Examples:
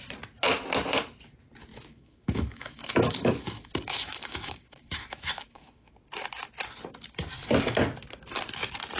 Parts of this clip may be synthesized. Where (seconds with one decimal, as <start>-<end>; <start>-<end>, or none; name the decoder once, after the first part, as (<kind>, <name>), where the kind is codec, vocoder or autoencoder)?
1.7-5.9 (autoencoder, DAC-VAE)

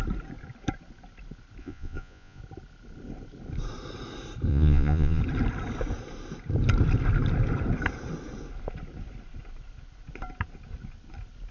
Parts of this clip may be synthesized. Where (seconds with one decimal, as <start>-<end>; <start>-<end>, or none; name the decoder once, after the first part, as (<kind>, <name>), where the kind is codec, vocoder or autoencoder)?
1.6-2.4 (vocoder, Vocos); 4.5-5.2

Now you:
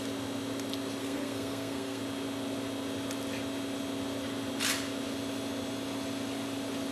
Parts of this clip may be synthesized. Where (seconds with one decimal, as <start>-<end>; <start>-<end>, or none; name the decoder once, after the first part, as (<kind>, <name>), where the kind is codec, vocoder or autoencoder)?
1.0-2.0 (codec, SNAC)